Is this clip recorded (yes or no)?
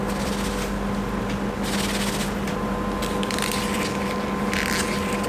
yes